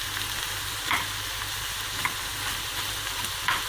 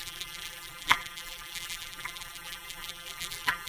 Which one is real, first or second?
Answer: first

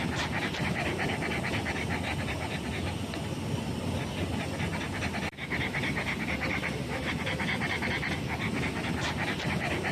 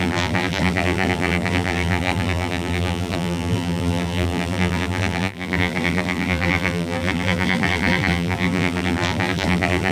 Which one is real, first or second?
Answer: first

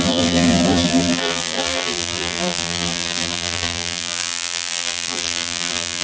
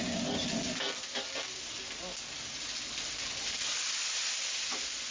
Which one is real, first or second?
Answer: second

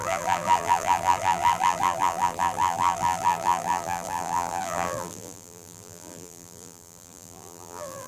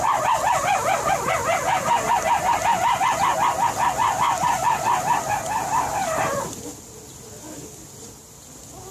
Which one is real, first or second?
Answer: second